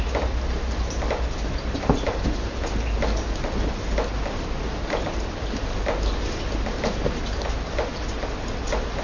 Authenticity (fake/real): real